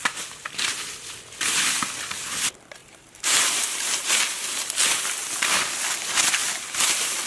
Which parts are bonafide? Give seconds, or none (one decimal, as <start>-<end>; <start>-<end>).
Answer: 0.0-2.8; 4.2-6.4